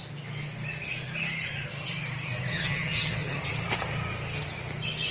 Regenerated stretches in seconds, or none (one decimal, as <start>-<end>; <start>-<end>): 2.5-3.4